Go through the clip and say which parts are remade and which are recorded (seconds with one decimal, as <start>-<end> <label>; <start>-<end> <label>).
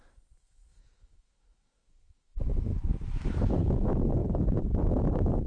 0.0-4.2 remade; 4.2-4.8 recorded; 4.8-5.5 remade